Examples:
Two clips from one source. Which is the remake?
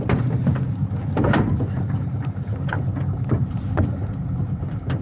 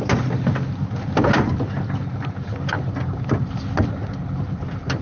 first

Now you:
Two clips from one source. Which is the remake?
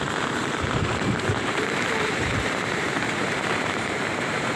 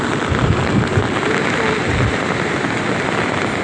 first